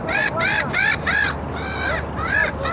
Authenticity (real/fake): real